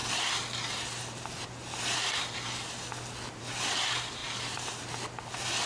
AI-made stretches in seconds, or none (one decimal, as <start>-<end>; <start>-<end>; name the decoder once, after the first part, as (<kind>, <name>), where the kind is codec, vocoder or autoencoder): none